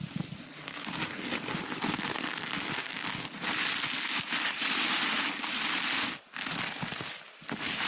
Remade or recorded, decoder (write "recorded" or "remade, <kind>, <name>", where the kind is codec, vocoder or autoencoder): recorded